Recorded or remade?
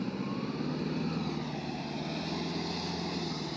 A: recorded